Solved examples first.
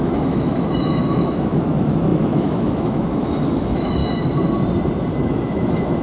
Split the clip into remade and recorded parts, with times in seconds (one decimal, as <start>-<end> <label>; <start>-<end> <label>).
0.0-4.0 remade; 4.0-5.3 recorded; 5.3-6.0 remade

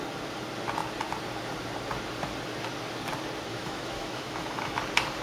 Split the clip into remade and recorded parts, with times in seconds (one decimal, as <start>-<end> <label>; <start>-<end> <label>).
0.0-3.5 recorded; 3.5-4.8 remade; 4.8-5.2 recorded

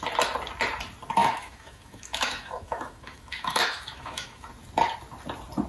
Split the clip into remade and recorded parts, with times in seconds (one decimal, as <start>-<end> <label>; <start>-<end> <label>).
0.0-1.2 recorded; 1.2-4.5 remade; 4.5-5.7 recorded

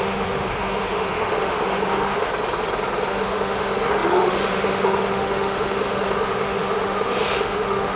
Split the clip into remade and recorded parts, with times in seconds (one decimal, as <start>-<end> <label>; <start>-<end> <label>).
0.0-2.3 remade; 2.3-3.1 recorded; 3.1-8.0 remade

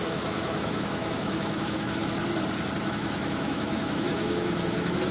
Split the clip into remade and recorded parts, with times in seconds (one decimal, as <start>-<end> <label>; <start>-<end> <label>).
0.0-2.0 remade; 2.0-2.9 recorded; 2.9-5.1 remade

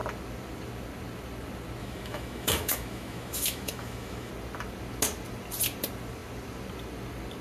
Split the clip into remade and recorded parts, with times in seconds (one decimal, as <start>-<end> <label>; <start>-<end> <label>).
0.0-1.8 recorded; 1.8-4.3 remade; 4.3-7.4 recorded

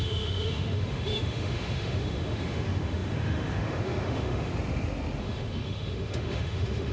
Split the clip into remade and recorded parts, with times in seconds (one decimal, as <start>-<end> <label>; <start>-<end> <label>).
0.0-4.5 remade; 4.5-5.2 recorded; 5.2-6.9 remade

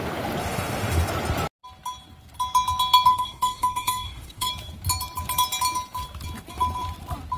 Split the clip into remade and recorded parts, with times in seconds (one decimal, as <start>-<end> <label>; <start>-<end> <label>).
0.0-0.4 recorded; 0.4-1.1 remade; 1.1-3.1 recorded; 3.1-4.5 remade; 4.5-7.4 recorded